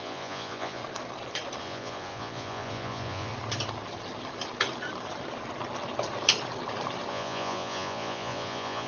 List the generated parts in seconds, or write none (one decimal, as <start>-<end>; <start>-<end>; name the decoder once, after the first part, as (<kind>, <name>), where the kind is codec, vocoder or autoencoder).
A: 0.0-0.8 (vocoder, Vocos); 1.6-3.3; 7.1-8.9